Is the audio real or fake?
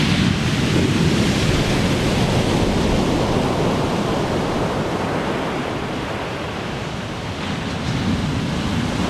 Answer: real